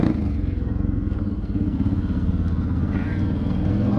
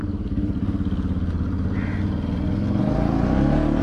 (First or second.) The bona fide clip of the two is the second